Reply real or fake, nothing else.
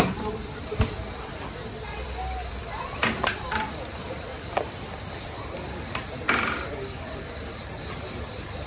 fake